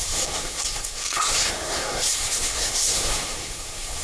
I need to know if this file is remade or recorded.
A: remade